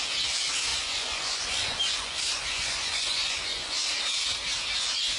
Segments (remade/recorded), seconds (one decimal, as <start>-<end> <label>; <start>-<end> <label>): 0.0-0.7 recorded; 0.7-3.8 remade; 3.8-5.2 recorded